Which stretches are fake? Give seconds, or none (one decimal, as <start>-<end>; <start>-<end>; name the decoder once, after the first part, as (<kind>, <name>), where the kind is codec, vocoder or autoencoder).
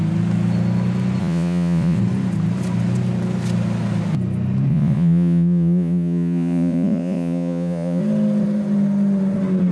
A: 1.2-2.0 (vocoder, Vocos); 4.7-8.0